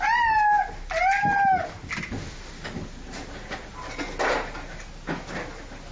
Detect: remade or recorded recorded